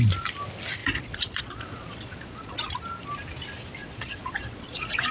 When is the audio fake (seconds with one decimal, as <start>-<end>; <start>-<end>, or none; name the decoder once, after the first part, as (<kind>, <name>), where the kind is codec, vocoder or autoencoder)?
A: 0.8-2.7 (vocoder, Vocos); 3.8-5.1